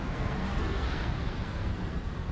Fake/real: fake